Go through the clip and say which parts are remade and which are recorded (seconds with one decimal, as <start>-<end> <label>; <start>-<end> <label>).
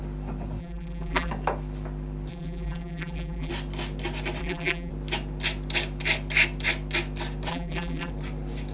0.0-0.6 recorded; 0.6-1.3 remade; 1.3-2.3 recorded; 2.3-3.5 remade; 3.5-4.4 recorded; 4.4-4.9 remade; 4.9-7.5 recorded; 7.5-8.1 remade; 8.1-8.7 recorded